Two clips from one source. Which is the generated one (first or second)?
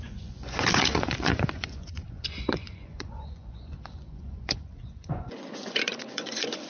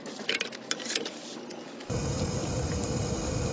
first